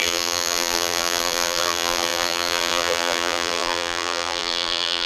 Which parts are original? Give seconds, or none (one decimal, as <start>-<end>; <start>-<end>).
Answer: none

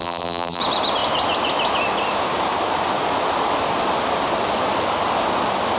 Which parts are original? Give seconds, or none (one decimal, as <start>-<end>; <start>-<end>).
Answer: 0.6-5.8

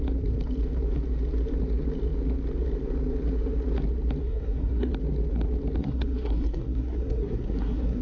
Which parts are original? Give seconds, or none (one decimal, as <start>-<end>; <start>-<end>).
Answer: 0.0-4.2; 4.9-5.8

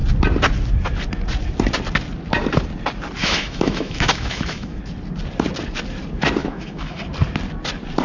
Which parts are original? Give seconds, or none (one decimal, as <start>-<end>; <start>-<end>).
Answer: 0.0-3.2; 4.8-6.4; 7.0-8.0

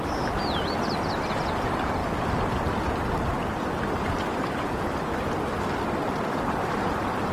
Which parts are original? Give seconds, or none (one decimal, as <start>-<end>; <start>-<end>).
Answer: 0.0-7.3

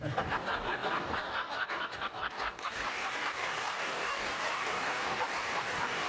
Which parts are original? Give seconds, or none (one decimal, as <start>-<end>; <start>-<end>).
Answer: none

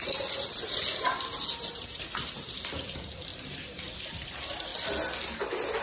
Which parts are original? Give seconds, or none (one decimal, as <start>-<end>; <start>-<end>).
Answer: 4.7-5.8

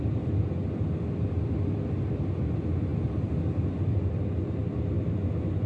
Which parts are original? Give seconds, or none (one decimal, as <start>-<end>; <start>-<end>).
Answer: 0.0-5.7